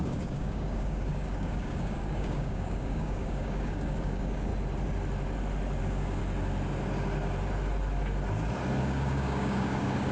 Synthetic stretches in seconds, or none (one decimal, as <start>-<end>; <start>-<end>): 0.0-4.5; 5.8-6.2; 8.8-10.1